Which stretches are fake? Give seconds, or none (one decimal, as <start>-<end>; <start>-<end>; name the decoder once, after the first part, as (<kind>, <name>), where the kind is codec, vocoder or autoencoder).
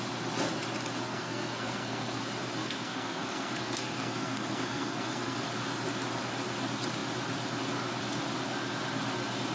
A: 1.1-2.2 (codec, SNAC); 2.6-5.4